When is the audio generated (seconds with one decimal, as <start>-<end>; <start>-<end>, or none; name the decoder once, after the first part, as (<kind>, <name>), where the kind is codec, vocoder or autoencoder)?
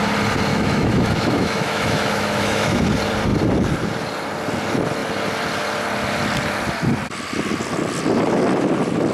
0.5-2.8 (autoencoder, DAC-VAE)